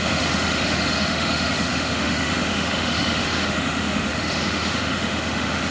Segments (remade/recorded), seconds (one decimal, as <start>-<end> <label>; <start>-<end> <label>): 0.0-5.7 remade